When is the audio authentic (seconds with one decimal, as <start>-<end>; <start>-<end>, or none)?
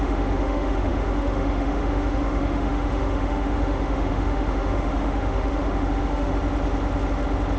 6.3-7.6